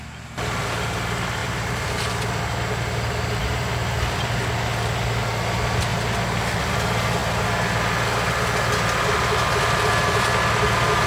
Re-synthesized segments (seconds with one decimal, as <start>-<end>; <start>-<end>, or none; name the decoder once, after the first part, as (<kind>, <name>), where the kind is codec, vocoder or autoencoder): 1.4-2.1 (vocoder, BigVGAN v2); 3.4-4.4